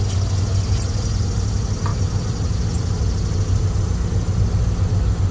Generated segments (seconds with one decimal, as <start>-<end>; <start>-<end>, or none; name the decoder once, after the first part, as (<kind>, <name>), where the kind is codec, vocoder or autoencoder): none